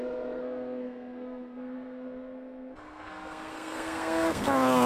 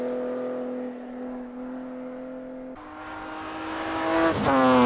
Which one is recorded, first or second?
second